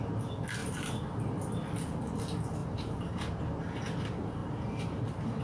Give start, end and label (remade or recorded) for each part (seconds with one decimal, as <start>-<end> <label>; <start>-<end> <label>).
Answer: 0.0-0.6 recorded; 0.6-1.2 remade; 1.2-2.6 recorded; 2.6-3.4 remade; 3.4-4.4 recorded; 4.4-5.4 remade